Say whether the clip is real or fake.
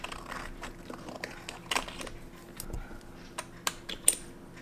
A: real